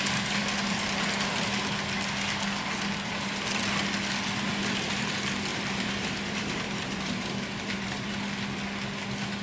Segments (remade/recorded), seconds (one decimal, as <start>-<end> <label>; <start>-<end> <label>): 0.0-5.5 recorded; 5.5-8.1 remade; 8.1-9.4 recorded